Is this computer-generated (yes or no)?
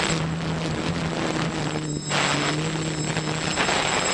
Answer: no